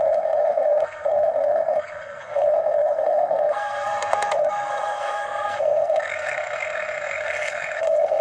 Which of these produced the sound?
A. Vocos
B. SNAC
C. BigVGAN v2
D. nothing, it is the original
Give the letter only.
B